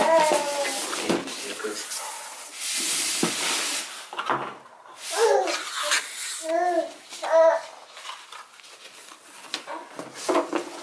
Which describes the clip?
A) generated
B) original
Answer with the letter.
B